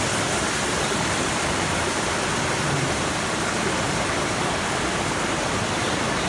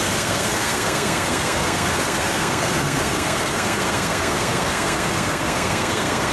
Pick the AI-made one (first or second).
second